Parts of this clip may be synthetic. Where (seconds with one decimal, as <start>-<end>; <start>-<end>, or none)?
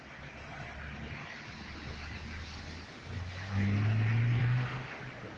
4.4-5.0